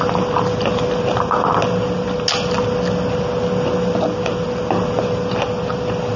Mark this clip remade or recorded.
recorded